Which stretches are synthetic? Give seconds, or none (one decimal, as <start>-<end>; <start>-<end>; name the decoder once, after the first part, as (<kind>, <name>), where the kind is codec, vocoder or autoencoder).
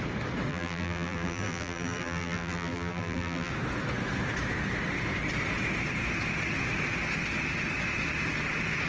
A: 0.5-3.5 (vocoder, BigVGAN v2)